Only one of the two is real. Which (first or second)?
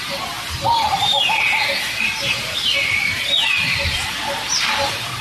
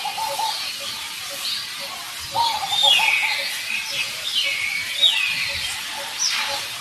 second